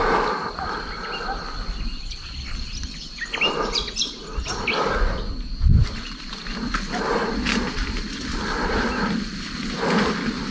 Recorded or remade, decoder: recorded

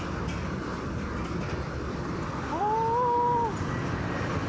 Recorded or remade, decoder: recorded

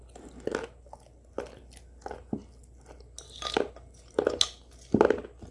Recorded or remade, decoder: recorded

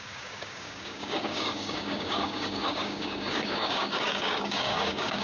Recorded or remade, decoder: remade, codec, DAC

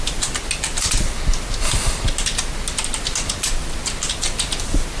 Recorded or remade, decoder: recorded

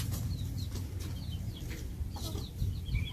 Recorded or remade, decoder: recorded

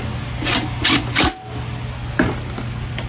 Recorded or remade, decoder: recorded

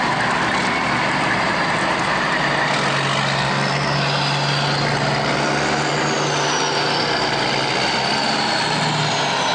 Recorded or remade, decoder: recorded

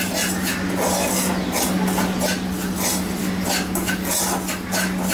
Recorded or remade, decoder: recorded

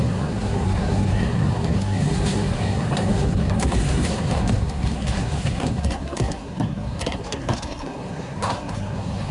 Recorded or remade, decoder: remade, codec, SNAC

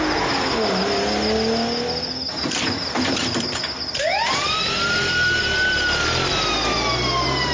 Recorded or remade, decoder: recorded